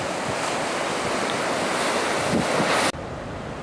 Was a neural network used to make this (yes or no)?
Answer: no